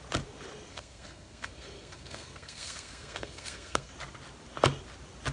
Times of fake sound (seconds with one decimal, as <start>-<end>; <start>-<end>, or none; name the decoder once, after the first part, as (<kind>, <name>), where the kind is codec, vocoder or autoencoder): 0.7-3.9 (codec, SNAC)